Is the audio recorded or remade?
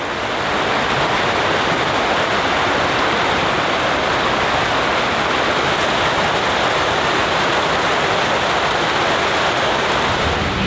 recorded